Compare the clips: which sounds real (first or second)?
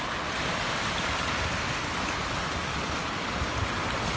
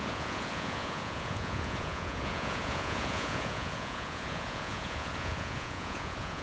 first